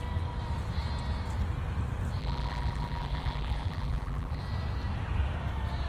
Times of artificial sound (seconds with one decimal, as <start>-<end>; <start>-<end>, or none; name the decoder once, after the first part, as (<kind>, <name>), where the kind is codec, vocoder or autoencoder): 2.2-4.4 (vocoder, BigVGAN v2)